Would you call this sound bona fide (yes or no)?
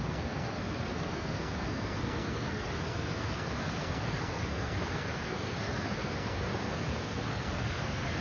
no